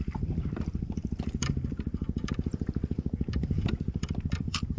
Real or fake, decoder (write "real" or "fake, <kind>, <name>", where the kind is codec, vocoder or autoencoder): fake, vocoder, BigVGAN v2